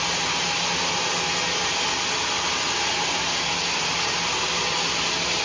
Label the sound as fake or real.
real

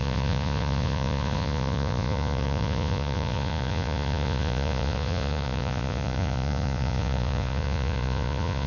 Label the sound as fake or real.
fake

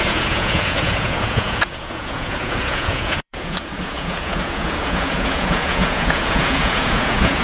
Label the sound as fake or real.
fake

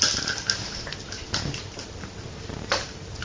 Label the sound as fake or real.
real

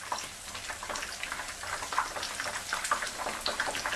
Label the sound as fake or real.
real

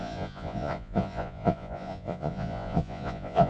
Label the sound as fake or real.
fake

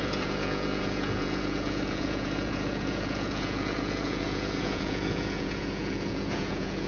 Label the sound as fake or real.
fake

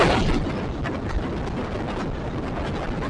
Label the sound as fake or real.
real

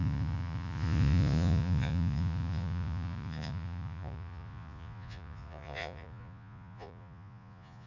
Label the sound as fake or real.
fake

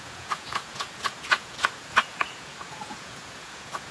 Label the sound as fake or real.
fake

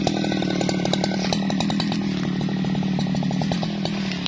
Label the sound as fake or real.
real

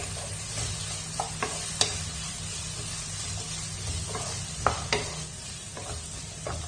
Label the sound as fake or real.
real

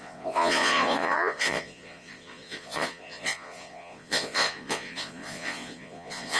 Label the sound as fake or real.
fake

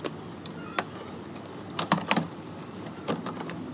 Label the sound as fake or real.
real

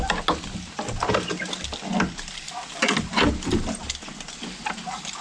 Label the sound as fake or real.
real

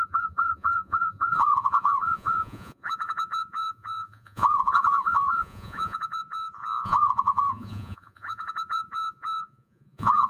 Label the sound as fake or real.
fake